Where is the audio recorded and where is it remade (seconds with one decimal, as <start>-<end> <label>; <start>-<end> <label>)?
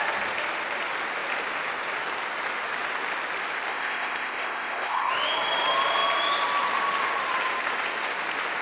0.0-3.7 recorded; 3.7-5.1 remade; 5.1-8.6 recorded